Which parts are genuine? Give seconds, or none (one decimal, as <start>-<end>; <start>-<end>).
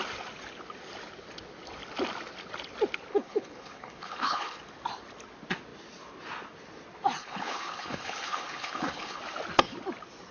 0.0-3.1; 4.6-7.2; 9.2-10.3